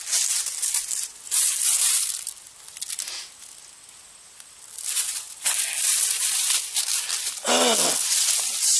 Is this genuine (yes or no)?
yes